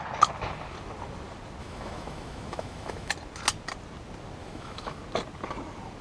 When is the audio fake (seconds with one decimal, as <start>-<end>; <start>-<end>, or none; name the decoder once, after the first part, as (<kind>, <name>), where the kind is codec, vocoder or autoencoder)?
1.6-3.1 (autoencoder, DAC-VAE); 4.4-5.0